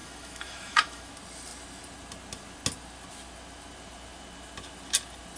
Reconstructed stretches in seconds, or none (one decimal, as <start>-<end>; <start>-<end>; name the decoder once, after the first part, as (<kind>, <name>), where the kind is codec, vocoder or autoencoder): 0.0-1.1 (autoencoder, DAC-VAE)